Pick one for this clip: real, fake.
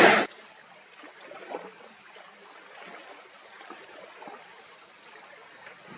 fake